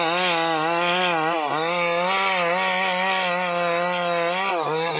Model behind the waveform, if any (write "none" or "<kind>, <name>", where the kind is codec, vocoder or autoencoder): none